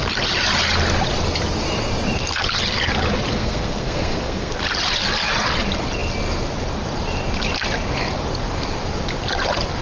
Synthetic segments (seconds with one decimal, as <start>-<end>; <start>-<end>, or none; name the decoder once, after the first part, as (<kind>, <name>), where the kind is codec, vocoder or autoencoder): 3.3-4.6 (codec, SNAC)